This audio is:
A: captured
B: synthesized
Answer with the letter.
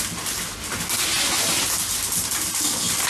A